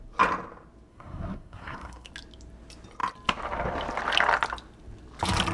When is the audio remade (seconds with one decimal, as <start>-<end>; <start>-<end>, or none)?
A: 0.9-2.1